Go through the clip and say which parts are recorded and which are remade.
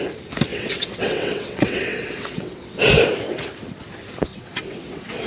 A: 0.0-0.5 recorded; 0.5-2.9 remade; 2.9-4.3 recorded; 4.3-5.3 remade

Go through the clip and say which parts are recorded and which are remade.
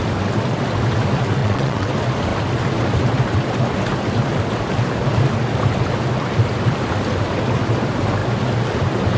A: 0.0-1.4 recorded; 1.4-1.9 remade; 1.9-9.2 recorded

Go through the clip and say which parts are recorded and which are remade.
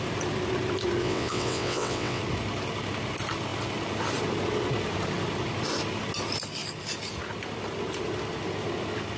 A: 0.0-1.0 recorded; 1.0-2.2 remade; 2.2-9.2 recorded